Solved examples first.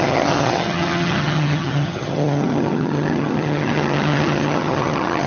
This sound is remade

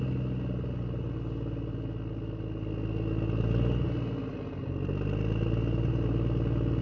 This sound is recorded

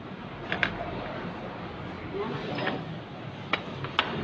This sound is recorded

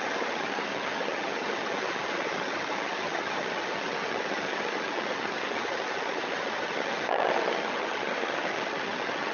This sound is remade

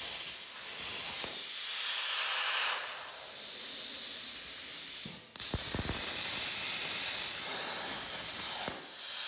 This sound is recorded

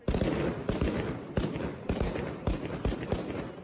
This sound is recorded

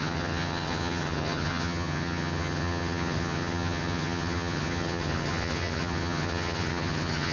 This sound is remade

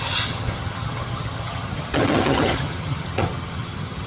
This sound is remade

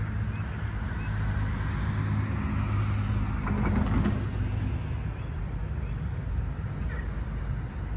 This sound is recorded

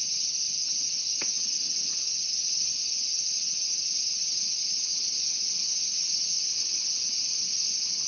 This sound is remade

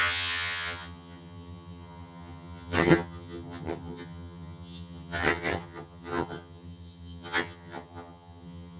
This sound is remade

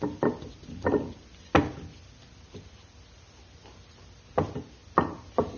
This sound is recorded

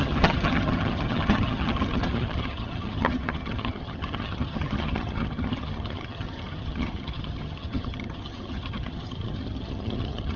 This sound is remade